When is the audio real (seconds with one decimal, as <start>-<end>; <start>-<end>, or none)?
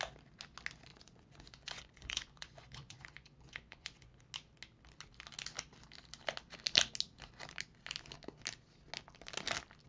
0.0-0.9; 4.2-9.9